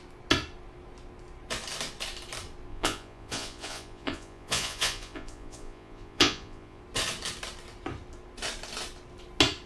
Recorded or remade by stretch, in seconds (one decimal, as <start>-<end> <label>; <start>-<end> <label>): 0.0-2.7 recorded; 2.7-6.8 remade; 6.8-9.7 recorded